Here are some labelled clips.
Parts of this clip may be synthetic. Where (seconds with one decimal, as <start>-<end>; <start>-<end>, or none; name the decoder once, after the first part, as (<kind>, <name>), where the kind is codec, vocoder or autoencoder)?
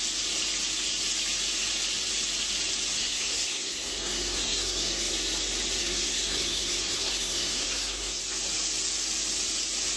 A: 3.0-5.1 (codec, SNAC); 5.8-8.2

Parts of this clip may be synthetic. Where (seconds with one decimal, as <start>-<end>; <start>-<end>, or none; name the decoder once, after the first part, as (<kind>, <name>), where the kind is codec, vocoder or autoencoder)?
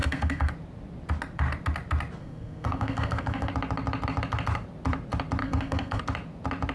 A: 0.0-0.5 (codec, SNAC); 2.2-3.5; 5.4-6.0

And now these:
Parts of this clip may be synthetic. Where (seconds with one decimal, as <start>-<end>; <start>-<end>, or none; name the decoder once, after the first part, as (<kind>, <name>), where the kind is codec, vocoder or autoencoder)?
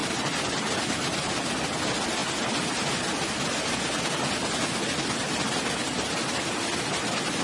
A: none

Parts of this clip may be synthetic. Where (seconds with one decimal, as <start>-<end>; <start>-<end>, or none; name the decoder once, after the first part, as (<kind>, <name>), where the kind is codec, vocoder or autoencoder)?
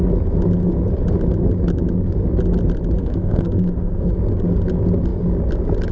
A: 3.0-4.1 (codec, SNAC)